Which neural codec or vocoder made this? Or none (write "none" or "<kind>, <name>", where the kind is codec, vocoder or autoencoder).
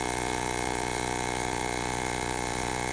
vocoder, Vocos